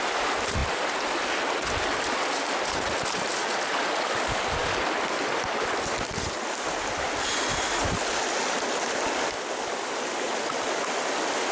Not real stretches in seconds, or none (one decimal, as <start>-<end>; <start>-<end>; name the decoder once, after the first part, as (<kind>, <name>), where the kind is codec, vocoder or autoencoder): none